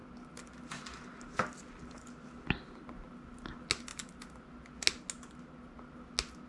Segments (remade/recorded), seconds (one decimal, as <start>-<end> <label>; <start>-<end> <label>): 0.0-6.5 recorded